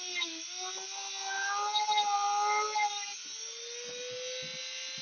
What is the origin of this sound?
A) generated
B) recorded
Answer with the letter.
B